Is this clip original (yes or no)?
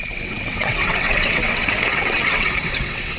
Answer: no